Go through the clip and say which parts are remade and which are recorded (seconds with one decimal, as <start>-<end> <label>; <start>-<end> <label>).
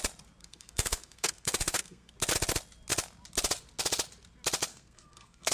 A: 0.0-0.4 recorded; 0.4-2.1 remade; 2.1-4.7 recorded; 4.7-5.5 remade